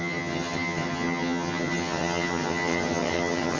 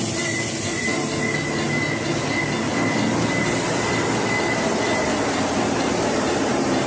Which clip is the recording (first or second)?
second